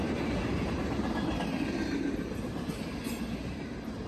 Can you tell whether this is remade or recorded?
recorded